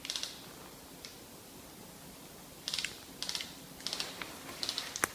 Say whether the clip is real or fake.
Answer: real